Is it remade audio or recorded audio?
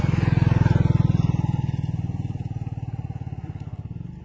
recorded